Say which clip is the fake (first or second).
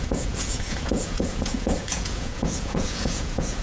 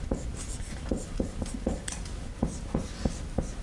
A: first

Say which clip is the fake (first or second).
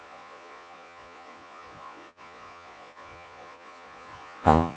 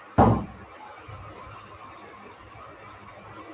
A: first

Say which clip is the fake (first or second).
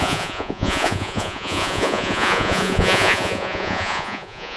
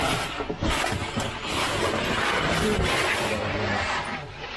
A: first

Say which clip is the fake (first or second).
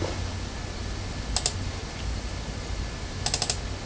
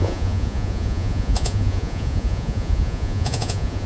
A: second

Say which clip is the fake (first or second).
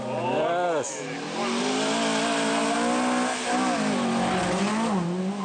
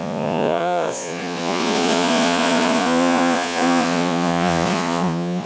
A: second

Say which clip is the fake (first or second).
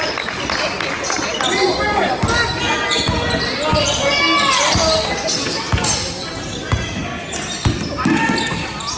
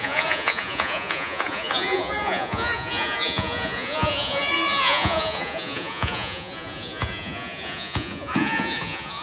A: second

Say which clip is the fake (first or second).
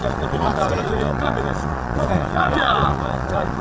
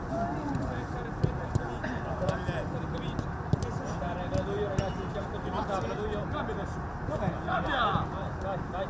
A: first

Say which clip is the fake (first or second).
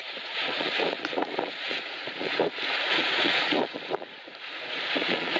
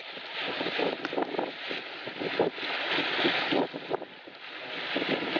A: first